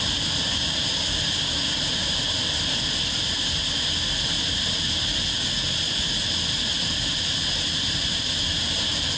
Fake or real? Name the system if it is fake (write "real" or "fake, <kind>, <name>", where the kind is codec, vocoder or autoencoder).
real